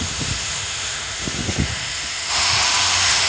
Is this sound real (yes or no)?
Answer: no